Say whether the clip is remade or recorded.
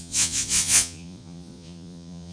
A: remade